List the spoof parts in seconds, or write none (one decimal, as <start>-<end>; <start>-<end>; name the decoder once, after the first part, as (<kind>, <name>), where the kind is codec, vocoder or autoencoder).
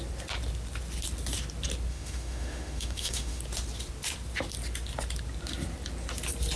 1.9-3.4 (autoencoder, DAC-VAE)